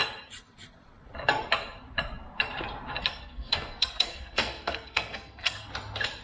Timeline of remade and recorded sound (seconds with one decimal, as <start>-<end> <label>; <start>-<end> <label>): 0.0-3.1 recorded; 3.1-5.7 remade; 5.7-6.2 recorded